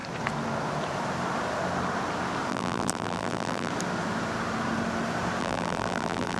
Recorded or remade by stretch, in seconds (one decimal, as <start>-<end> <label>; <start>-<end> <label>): 0.0-2.5 recorded; 2.5-3.7 remade; 3.7-5.4 recorded; 5.4-6.4 remade